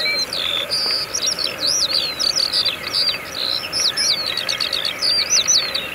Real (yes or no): yes